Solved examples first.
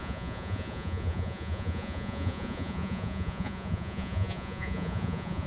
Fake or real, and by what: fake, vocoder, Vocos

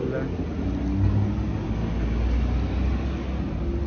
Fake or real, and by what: real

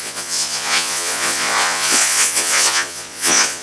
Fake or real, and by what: fake, vocoder, Vocos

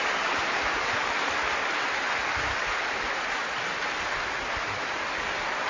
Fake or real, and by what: real